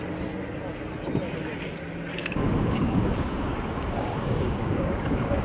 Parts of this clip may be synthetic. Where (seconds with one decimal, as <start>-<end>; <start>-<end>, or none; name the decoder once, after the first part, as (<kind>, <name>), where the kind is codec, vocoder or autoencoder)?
2.2-5.4 (codec, DAC)